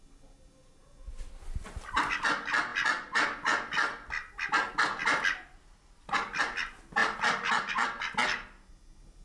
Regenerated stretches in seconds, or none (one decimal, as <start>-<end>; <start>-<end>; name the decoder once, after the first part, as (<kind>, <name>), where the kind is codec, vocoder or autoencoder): 7.0-7.7 (vocoder, BigVGAN v2)